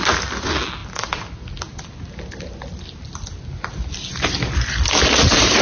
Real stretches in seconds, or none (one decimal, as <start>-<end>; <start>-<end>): 0.0-5.6